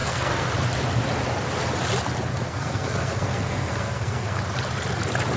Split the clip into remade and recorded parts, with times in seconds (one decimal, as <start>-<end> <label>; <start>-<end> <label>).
0.0-0.5 remade; 0.5-2.3 recorded; 2.3-4.4 remade; 4.4-5.4 recorded